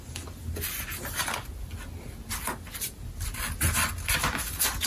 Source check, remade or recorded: recorded